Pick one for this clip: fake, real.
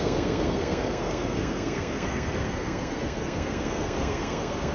fake